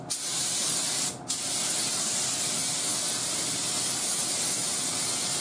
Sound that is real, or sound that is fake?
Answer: real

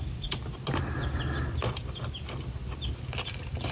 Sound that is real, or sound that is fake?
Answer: real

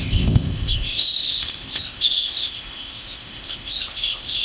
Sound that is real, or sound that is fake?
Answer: fake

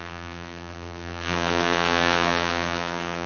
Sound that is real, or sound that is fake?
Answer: fake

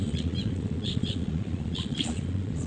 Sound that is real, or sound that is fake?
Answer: fake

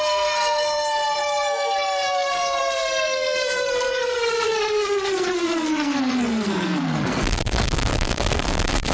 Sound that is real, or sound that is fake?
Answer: fake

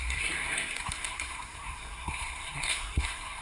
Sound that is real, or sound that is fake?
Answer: fake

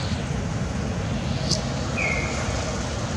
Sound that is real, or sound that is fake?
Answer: real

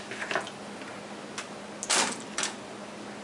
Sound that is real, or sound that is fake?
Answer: real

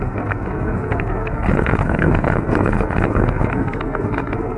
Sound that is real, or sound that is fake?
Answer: fake